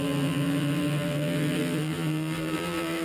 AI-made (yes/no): yes